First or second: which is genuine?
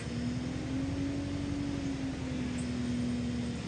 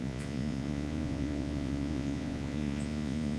first